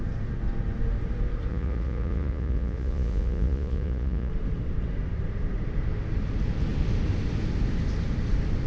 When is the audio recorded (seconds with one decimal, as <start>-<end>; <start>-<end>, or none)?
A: 0.0-1.5; 4.3-8.7